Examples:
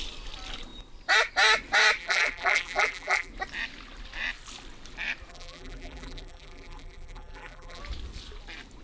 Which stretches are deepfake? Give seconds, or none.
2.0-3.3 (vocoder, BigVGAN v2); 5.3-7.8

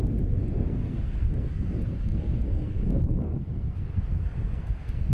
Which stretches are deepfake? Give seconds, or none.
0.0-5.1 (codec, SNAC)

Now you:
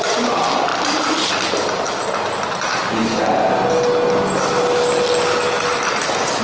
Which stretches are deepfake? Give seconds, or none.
none

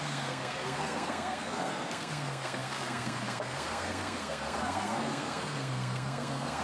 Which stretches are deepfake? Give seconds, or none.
0.0-6.6 (codec, SNAC)